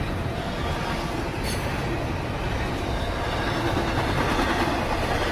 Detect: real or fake real